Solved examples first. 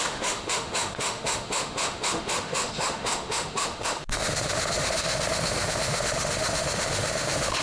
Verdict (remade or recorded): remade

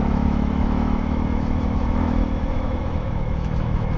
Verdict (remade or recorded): remade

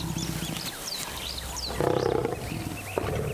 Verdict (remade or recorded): recorded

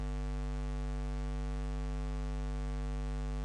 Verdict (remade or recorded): recorded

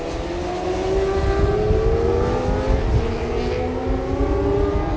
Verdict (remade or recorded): recorded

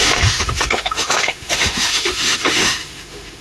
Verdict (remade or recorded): remade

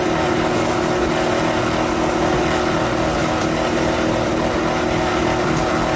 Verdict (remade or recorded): recorded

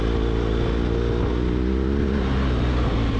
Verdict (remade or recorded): recorded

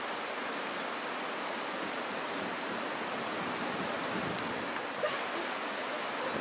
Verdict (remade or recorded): recorded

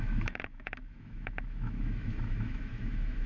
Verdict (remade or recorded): remade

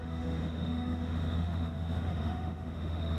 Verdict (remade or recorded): remade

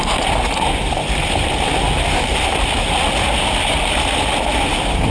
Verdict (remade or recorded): recorded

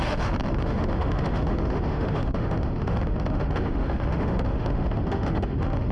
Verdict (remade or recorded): remade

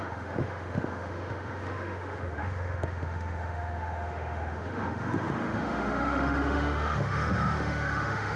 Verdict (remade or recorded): remade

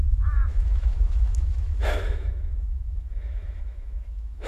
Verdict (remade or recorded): remade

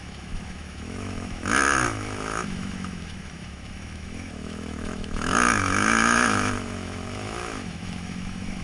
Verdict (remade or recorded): remade